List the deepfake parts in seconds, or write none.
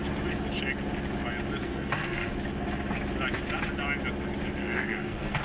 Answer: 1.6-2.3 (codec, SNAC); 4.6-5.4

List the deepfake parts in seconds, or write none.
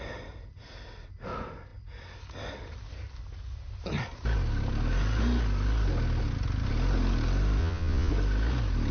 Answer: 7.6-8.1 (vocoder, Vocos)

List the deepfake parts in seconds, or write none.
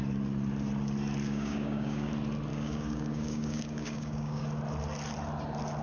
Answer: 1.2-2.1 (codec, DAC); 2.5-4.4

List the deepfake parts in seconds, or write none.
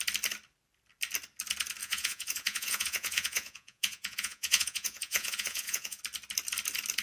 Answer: 1.8-6.0 (vocoder, Vocos)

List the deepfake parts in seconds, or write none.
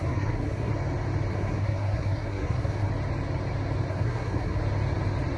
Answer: 0.0-0.7 (codec, SNAC); 1.3-2.9; 3.9-4.6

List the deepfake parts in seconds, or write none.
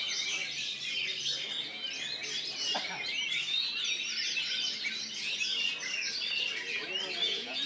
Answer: 7.2-7.7 (vocoder, Vocos)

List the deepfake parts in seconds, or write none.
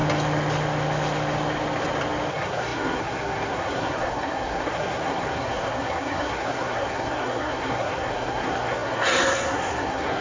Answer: 2.3-10.2 (codec, SNAC)